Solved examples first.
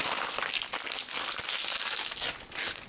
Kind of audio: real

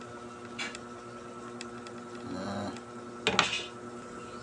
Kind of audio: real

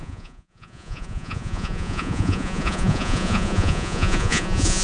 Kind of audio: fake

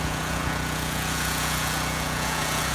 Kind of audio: fake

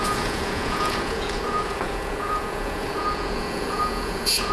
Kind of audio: fake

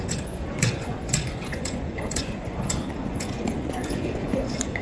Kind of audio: fake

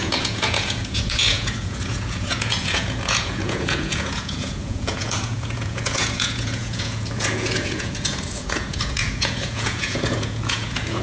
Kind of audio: fake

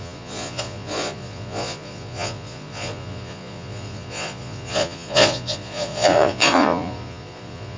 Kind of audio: fake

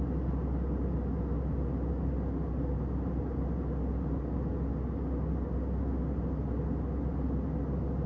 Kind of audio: real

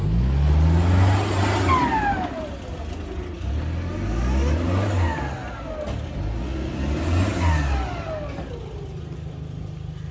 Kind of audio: real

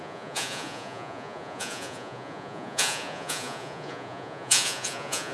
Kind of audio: fake